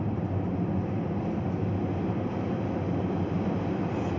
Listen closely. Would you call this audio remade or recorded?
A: recorded